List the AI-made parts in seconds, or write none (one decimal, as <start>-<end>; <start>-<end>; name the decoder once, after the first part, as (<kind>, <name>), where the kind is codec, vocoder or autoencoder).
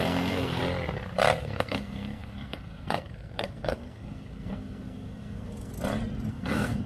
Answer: 0.0-0.6 (codec, SNAC); 1.4-5.7; 6.3-6.9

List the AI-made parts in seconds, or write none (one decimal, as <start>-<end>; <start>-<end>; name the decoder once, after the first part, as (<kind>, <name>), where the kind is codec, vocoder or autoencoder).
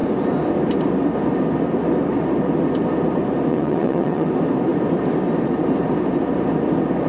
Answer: 3.5-4.3 (vocoder, WaveNeXt)